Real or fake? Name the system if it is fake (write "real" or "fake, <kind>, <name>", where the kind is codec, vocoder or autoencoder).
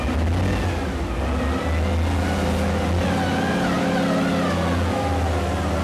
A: real